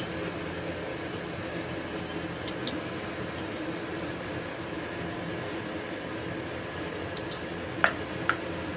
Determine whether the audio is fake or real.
real